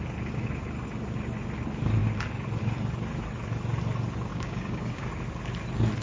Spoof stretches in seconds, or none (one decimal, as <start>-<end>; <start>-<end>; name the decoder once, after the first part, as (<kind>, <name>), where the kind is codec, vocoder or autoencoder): 4.3-5.1 (codec, DAC)